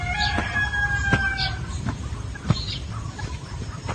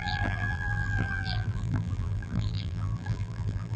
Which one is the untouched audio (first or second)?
first